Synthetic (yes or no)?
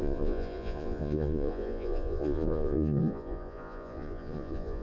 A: yes